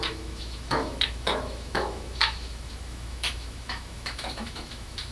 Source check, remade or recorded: remade